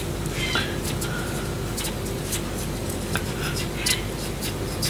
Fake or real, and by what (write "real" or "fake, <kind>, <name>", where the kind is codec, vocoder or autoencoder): real